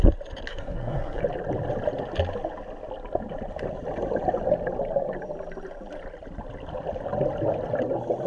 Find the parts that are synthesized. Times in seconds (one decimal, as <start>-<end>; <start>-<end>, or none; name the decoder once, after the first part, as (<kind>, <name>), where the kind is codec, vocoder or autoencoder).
0.5-1.2 (codec, SNAC)